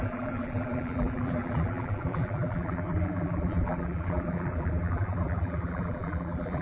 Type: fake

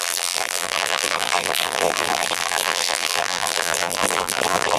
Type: fake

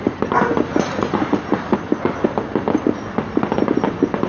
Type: real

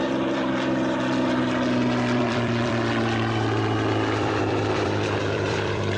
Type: fake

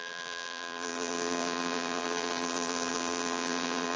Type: fake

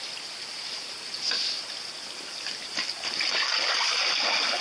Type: fake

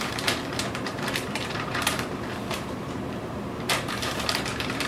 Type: fake